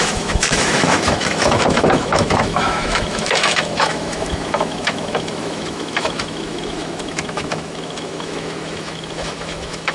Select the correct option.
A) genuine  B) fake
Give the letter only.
B